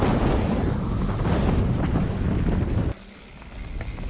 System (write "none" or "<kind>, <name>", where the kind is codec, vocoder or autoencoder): none